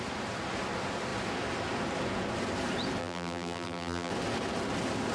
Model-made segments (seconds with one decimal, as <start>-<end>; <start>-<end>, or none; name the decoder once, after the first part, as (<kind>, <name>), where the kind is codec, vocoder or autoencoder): 3.0-4.1 (vocoder, BigVGAN v2)